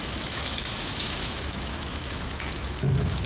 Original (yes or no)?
no